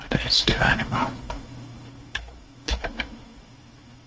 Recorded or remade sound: remade